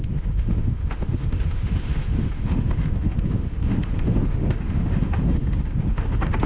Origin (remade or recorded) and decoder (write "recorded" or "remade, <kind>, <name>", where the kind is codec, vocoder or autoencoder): remade, autoencoder, DAC-VAE